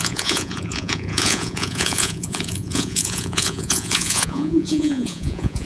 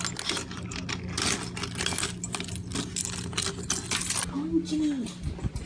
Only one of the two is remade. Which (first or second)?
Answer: first